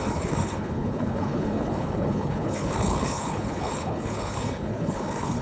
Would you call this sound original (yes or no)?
no